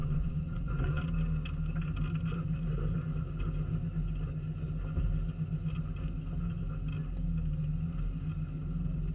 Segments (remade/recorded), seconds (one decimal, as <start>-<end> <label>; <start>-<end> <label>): 0.0-1.0 remade; 1.0-9.1 recorded